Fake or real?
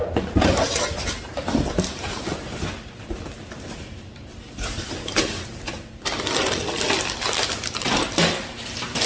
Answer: fake